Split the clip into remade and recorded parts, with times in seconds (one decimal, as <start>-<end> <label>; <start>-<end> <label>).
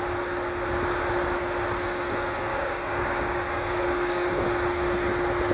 0.0-2.5 recorded; 2.5-4.3 remade; 4.3-5.5 recorded